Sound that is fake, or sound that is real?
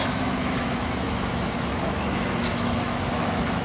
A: fake